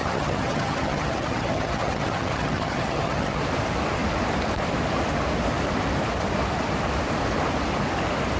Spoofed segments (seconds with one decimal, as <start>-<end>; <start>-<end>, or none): 0.0-3.4